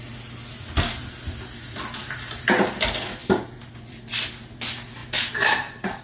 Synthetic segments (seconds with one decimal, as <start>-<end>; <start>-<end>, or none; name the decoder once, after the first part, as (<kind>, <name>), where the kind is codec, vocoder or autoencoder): 2.0-2.7 (vocoder, BigVGAN v2); 5.0-6.0